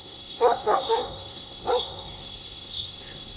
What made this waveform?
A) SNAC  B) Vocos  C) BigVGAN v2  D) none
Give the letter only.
A